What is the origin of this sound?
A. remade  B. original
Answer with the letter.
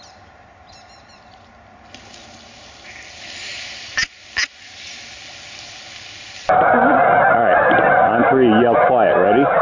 B